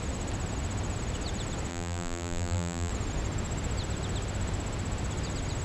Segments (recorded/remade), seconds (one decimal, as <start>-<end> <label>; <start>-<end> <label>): 0.0-1.7 recorded; 1.7-2.9 remade; 2.9-5.6 recorded